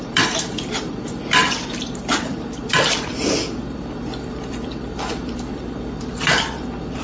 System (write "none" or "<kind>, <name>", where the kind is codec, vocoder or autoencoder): vocoder, BigVGAN v2